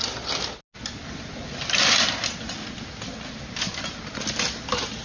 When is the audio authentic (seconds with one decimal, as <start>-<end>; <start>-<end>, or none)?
0.0-5.0